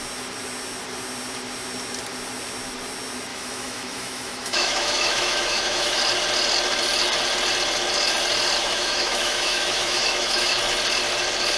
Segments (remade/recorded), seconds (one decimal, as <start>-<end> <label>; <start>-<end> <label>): 0.0-3.3 recorded; 3.3-6.0 remade; 6.0-8.6 recorded; 8.6-10.6 remade; 10.6-11.6 recorded